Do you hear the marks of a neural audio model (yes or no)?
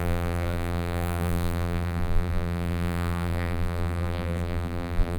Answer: yes